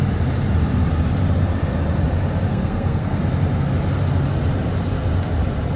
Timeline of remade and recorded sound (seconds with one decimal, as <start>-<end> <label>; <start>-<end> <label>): 0.0-2.5 recorded; 2.5-3.2 remade; 3.2-5.8 recorded